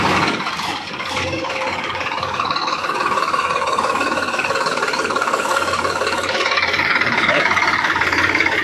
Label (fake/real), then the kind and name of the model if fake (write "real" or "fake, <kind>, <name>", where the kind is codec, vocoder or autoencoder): fake, codec, DAC